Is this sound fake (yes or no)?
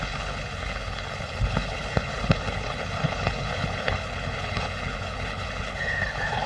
yes